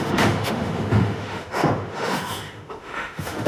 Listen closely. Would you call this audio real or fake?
fake